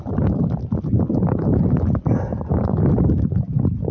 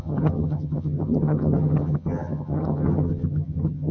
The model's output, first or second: second